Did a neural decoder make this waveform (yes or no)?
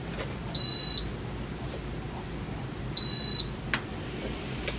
no